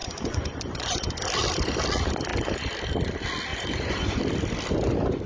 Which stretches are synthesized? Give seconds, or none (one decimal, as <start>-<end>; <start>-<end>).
0.0-1.1; 3.5-4.2

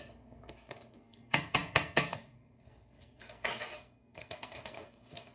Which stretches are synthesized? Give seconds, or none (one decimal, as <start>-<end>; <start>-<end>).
0.0-5.3

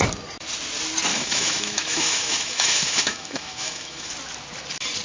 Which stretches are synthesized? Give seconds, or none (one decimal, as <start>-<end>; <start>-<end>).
1.1-4.1

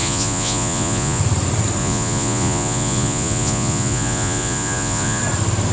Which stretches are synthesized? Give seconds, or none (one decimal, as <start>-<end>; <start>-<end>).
0.0-1.2; 1.8-5.2

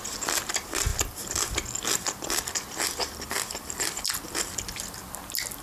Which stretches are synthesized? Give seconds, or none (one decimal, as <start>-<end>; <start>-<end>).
none

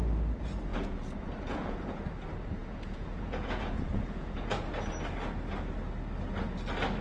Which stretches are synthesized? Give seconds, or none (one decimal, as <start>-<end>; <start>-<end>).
0.7-2.0; 2.6-4.7

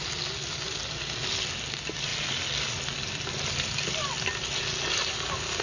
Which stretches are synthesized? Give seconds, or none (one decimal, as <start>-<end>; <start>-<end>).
none